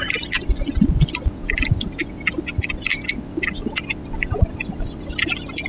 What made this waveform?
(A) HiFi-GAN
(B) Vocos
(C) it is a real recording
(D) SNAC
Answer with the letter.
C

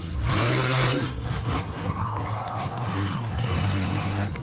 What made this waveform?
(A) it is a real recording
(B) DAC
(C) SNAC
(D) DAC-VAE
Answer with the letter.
C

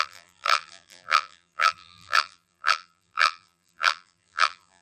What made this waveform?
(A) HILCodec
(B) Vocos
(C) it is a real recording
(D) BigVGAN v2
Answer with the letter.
D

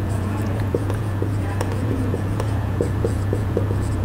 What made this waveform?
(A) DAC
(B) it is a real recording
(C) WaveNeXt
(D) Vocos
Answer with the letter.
D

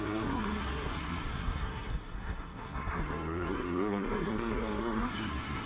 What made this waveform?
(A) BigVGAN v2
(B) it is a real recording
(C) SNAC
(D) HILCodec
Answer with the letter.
C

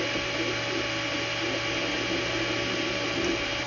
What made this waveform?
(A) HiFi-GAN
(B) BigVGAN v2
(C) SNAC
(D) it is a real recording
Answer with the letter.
D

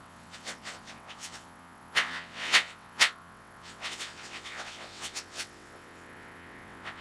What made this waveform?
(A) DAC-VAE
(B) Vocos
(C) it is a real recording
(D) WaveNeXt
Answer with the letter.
D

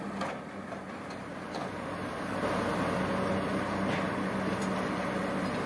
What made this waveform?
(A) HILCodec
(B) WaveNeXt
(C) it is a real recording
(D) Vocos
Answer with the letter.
C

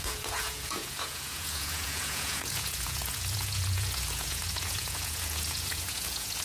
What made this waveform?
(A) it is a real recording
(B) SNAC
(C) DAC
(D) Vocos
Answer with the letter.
D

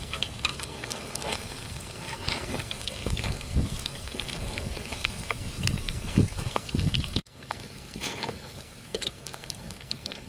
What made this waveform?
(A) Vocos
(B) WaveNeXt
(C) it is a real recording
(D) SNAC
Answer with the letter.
D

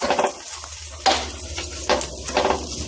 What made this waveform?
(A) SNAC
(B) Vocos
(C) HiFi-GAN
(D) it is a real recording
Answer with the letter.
D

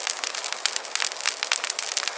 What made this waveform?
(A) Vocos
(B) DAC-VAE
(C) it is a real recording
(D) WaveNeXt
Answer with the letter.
C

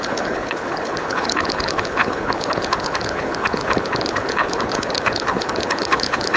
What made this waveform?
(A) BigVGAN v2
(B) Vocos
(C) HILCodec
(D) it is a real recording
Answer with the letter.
C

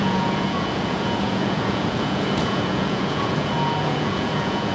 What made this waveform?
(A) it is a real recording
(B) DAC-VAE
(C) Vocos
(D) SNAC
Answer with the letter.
C